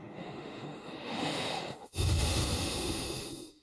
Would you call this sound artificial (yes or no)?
yes